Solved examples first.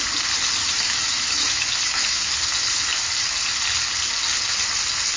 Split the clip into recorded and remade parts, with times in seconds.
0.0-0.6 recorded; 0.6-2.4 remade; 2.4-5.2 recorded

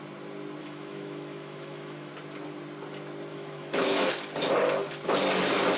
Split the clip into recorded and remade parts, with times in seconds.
0.0-0.6 recorded; 0.6-2.1 remade; 2.1-3.3 recorded; 3.3-4.1 remade; 4.1-5.8 recorded